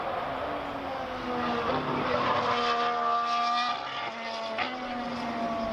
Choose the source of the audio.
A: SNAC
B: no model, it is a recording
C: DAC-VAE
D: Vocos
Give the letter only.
B